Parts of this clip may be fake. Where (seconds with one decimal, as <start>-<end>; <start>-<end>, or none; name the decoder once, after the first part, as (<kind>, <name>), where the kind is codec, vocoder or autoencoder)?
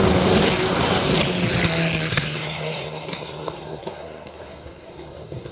2.1-5.5 (codec, SNAC)